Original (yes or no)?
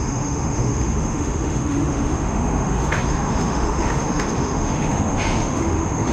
no